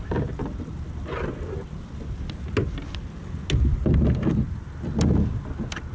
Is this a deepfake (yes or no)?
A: no